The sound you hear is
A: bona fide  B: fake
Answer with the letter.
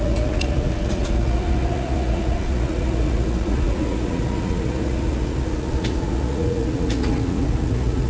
B